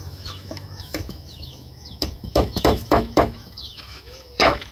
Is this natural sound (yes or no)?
no